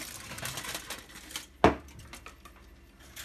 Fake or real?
real